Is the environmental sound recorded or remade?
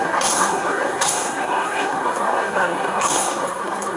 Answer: remade